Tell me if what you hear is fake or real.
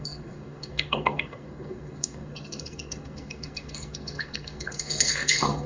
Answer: fake